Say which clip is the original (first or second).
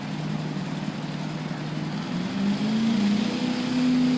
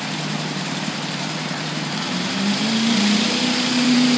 first